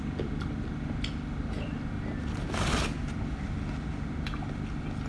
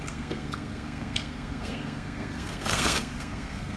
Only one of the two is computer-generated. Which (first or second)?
second